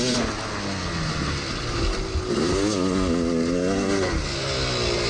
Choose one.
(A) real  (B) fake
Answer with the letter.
A